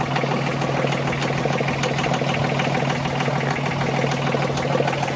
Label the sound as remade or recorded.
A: recorded